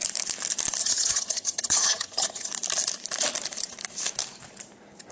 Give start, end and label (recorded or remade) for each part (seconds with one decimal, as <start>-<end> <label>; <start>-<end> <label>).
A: 0.0-0.8 recorded; 0.8-2.5 remade; 2.5-5.1 recorded